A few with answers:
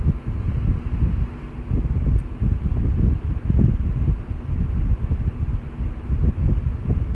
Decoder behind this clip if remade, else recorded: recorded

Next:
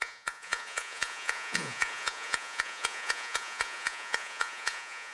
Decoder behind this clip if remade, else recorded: remade, vocoder, Vocos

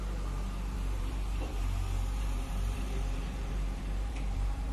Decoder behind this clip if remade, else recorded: remade, vocoder, BigVGAN v2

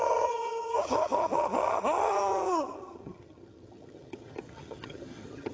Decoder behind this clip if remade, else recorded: remade, vocoder, HiFi-GAN